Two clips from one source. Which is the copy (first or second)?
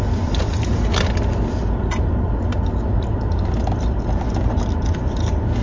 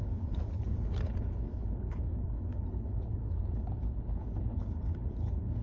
second